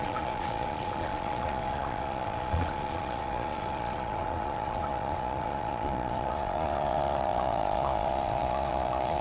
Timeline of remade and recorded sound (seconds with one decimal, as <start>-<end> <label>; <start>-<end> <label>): 0.0-9.2 remade